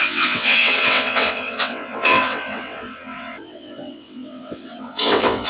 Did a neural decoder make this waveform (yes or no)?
yes